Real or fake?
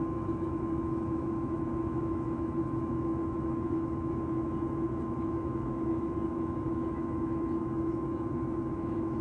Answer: fake